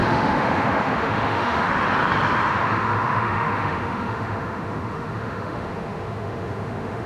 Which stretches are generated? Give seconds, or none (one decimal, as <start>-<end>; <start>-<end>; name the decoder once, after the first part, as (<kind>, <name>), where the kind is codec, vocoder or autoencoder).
0.0-1.7 (autoencoder, DAC-VAE); 2.5-7.1